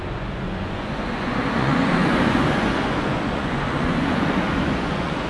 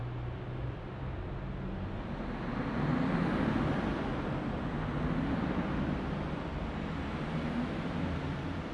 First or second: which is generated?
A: first